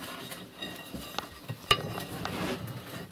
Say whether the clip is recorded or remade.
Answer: recorded